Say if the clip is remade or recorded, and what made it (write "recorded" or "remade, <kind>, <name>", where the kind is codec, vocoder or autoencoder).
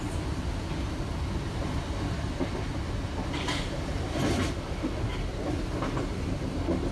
recorded